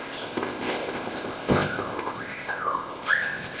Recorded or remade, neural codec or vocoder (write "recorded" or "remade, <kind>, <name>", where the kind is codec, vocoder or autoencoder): remade, codec, ZipCodec